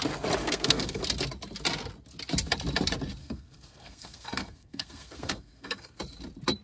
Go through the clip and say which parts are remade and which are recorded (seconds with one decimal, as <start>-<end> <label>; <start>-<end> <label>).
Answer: 0.0-0.4 recorded; 0.4-1.0 remade; 1.0-3.2 recorded; 3.2-6.0 remade; 6.0-6.6 recorded